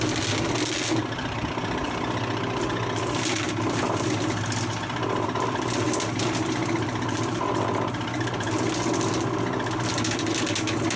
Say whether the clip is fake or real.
real